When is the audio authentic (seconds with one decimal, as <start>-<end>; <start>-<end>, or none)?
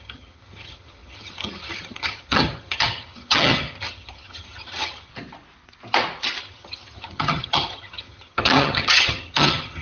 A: 5.1-6.4